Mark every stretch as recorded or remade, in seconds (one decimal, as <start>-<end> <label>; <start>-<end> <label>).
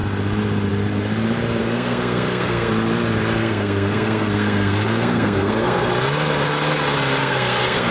0.0-1.6 recorded; 1.6-2.7 remade; 2.7-3.4 recorded; 3.4-5.9 remade; 5.9-7.2 recorded; 7.2-7.9 remade